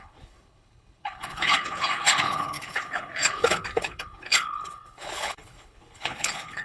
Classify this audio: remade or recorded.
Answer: remade